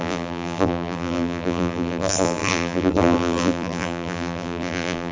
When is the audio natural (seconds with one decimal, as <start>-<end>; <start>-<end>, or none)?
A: none